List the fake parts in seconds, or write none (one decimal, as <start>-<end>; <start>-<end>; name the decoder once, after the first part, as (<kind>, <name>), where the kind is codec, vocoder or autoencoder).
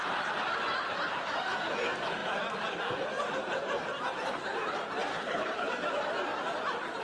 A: 5.1-5.7 (codec, HILCodec)